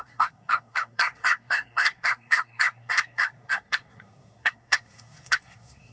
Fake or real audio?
fake